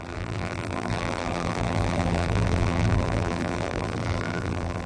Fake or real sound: fake